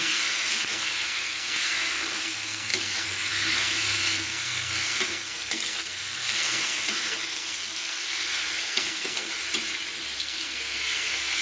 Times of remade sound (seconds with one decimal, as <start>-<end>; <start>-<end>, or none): 0.0-9.3; 10.2-11.4